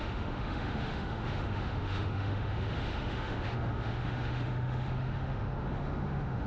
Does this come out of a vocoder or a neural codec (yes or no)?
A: yes